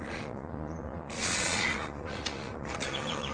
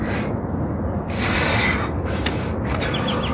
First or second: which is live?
second